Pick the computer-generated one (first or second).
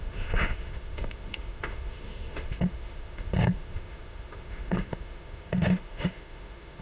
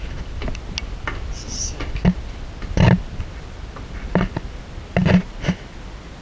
first